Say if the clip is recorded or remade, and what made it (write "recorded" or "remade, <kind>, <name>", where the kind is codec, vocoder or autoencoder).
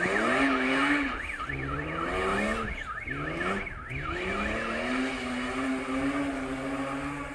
recorded